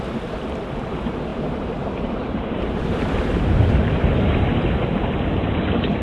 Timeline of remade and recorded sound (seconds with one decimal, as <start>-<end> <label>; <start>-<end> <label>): 0.0-1.3 recorded; 1.3-4.9 remade; 4.9-6.0 recorded